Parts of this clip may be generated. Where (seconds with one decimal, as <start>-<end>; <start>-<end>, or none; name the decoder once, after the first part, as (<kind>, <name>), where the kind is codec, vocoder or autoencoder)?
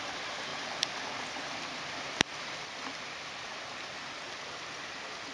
0.5-3.7 (vocoder, BigVGAN v2)